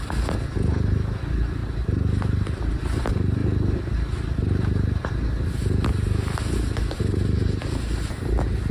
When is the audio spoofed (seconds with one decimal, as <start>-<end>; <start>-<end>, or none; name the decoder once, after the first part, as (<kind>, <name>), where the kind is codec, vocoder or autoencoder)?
none